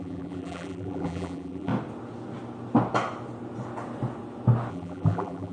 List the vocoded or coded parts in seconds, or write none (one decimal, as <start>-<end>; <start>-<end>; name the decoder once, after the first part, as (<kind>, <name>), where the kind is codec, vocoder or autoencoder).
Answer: 0.0-1.7 (vocoder, BigVGAN v2); 4.7-5.5